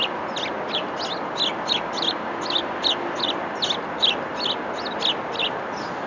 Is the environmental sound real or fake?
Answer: real